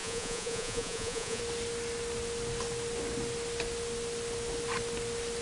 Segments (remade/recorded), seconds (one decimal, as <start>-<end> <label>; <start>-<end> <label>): 0.0-1.4 remade; 1.4-5.4 recorded